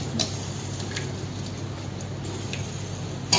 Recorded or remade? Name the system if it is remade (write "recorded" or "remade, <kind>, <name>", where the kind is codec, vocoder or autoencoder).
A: recorded